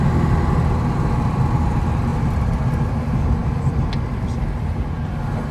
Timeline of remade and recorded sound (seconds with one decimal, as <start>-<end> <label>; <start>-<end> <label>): 0.0-2.1 recorded; 2.1-2.6 remade; 2.6-5.5 recorded